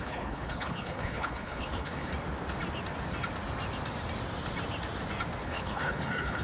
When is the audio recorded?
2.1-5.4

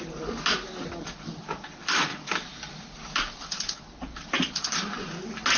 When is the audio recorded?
0.0-5.6

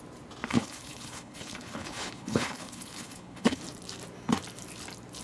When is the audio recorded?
0.0-0.5; 3.6-5.2

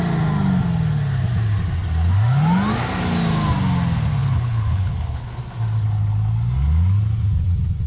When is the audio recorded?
0.0-4.2; 5.4-7.9

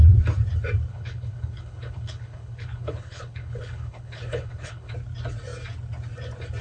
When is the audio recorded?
0.0-0.9; 4.9-6.6